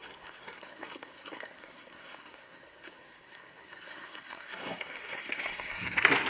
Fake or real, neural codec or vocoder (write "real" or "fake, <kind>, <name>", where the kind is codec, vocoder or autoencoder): fake, codec, SNAC